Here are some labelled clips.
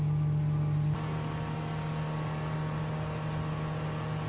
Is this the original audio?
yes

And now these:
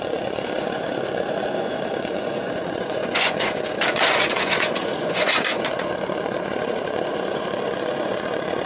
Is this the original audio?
no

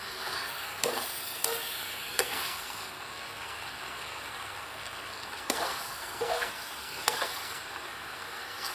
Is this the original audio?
no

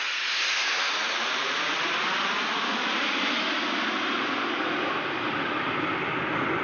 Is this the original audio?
yes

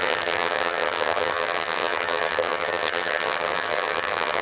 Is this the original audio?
no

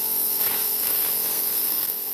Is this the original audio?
no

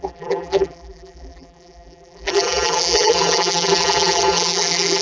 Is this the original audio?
no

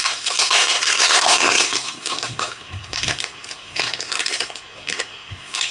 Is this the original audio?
no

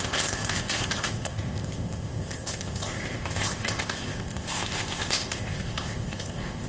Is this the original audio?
no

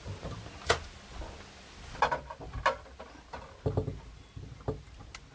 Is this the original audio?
yes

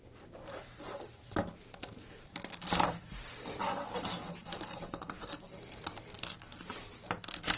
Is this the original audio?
no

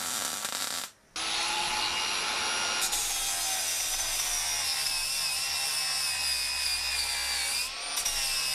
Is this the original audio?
yes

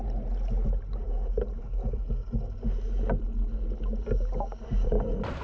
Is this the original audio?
yes